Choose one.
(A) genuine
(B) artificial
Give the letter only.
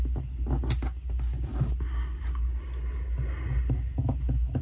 A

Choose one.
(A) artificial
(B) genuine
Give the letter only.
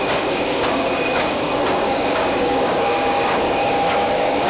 A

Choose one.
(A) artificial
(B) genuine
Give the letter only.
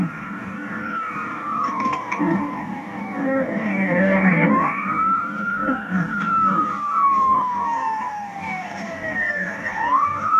A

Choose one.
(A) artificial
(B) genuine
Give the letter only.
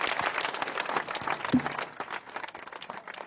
B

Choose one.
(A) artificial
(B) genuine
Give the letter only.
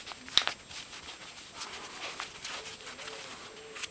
B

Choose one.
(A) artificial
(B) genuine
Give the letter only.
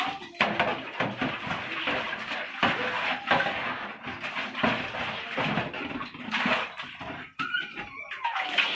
B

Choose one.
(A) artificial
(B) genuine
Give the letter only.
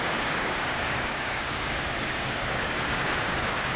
A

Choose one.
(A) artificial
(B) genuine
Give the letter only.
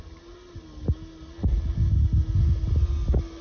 B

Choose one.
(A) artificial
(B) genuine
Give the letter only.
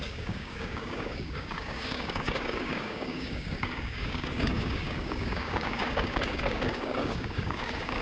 A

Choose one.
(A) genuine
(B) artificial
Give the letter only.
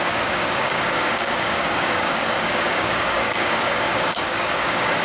B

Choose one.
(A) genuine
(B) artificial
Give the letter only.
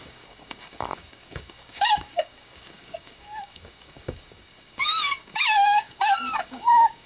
B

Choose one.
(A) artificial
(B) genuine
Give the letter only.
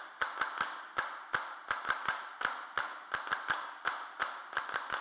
B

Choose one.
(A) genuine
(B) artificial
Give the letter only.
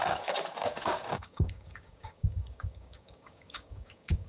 B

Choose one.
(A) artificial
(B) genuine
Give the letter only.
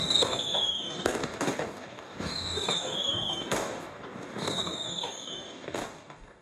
A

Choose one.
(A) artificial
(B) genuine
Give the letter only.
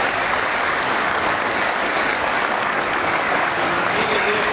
A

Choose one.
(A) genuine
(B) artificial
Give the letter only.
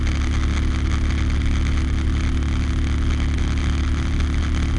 A